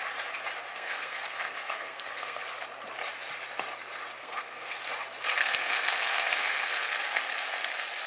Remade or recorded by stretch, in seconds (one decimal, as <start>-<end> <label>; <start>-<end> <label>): 0.0-0.7 recorded; 0.7-2.4 remade; 2.4-4.2 recorded; 4.2-4.8 remade; 4.8-5.4 recorded; 5.4-6.9 remade; 6.9-8.1 recorded